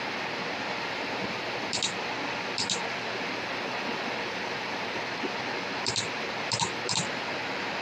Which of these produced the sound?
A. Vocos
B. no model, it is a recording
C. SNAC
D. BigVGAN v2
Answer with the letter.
B